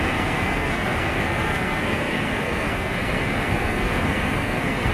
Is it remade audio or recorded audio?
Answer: remade